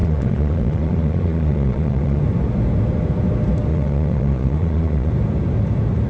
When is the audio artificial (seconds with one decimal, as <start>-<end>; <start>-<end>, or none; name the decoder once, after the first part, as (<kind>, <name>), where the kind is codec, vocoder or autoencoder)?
0.0-2.2 (vocoder, Vocos); 3.7-5.1